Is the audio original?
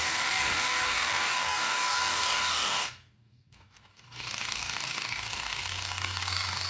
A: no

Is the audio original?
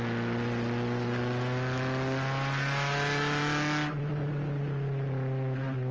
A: yes